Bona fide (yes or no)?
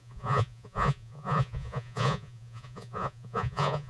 no